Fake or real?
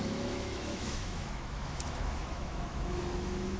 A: fake